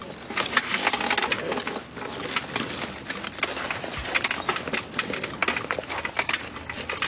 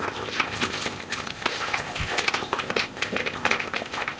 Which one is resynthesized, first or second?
second